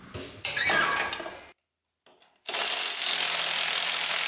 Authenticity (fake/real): real